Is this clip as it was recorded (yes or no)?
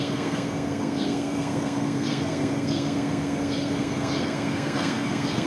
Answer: no